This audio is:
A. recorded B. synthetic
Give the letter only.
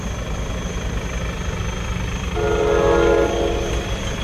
A